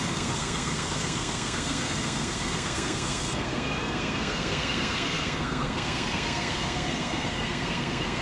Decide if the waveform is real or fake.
fake